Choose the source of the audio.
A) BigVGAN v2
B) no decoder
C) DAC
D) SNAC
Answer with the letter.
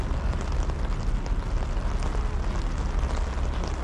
B